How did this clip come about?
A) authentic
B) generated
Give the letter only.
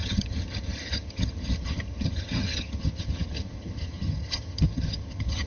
B